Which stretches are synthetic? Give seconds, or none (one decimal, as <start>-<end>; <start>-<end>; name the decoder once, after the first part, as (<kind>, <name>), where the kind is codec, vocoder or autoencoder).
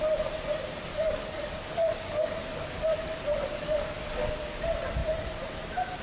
0.9-4.5 (codec, DAC)